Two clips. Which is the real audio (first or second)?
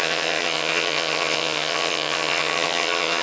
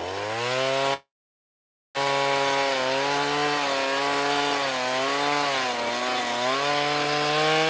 second